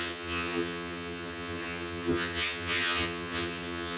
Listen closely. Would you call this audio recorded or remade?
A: remade